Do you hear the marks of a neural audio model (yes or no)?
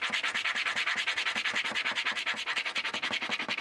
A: no